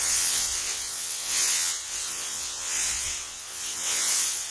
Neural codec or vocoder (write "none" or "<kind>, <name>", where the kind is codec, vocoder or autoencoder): vocoder, WaveNeXt